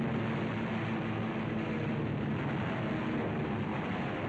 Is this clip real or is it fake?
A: real